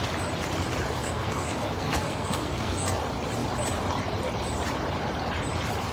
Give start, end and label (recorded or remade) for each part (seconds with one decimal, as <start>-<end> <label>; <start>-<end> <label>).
0.0-1.0 recorded; 1.0-3.0 remade; 3.0-5.9 recorded